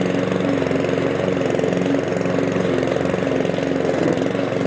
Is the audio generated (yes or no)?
no